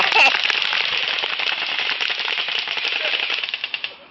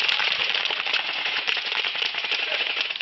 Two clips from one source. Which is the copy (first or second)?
second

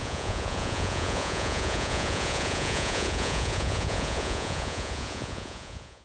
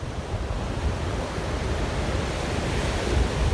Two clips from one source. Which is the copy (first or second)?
first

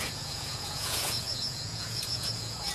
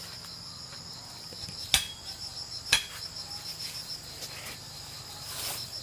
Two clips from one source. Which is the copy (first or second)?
first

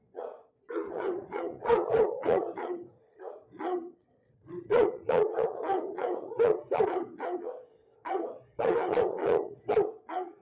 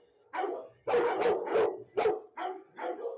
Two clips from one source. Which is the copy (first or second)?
first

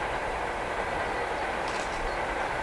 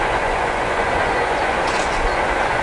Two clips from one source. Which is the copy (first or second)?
second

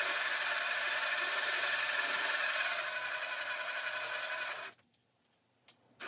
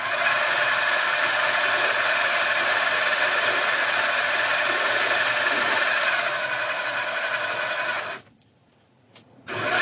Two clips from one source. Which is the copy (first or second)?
second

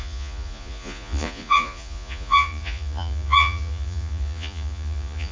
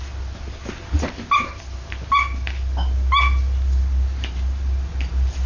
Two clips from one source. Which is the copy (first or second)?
first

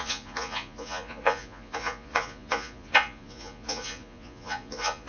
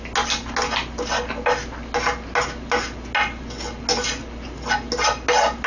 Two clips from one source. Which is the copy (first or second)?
first